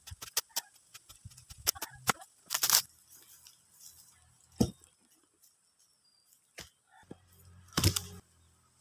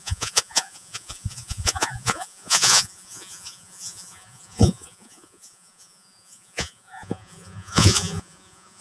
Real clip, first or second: first